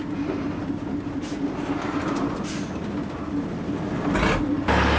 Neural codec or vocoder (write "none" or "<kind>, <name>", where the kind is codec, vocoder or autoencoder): none